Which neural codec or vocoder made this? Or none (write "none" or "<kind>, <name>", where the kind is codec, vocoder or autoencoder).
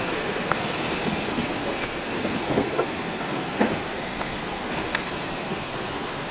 codec, SNAC